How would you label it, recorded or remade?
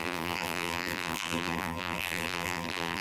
remade